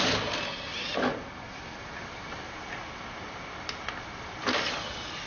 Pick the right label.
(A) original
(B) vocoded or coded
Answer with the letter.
A